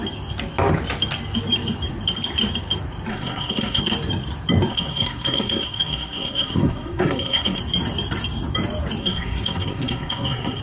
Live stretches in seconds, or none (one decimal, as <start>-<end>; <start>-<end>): 0.0-3.1; 3.8-4.7; 7.6-9.0